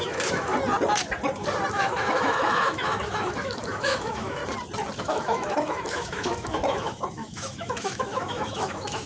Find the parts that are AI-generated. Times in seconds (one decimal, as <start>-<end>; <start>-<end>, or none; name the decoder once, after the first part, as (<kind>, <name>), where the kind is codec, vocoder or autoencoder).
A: 0.0-0.5 (autoencoder, DAC-VAE); 1.7-4.4; 5.0-9.1